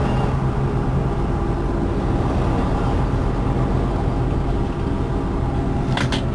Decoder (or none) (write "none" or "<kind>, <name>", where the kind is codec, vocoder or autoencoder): none